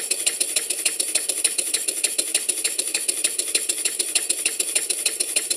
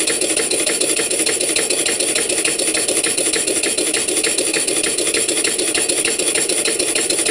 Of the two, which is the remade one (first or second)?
first